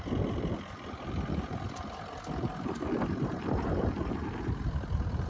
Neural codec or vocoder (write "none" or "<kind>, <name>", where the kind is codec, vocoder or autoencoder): none